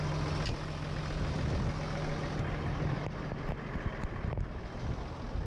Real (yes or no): yes